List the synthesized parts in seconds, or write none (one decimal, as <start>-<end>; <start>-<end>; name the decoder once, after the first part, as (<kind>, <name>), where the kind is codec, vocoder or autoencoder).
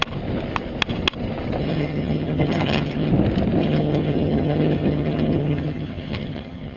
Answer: 1.6-3.1 (vocoder, HiFi-GAN); 3.6-6.8